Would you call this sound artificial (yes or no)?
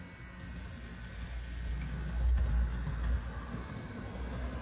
no